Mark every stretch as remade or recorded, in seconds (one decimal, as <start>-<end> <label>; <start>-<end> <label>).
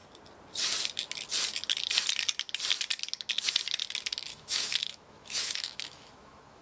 0.0-4.3 recorded; 4.3-6.6 remade